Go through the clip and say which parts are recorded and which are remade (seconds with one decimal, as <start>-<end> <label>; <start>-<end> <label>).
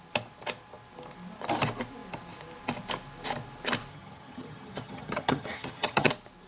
0.0-3.9 recorded; 3.9-6.1 remade; 6.1-6.5 recorded